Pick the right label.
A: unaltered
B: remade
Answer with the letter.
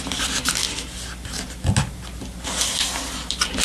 A